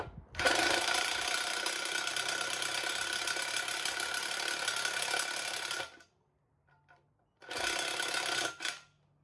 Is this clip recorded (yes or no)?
yes